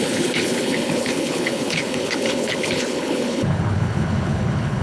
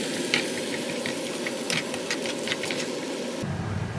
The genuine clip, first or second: second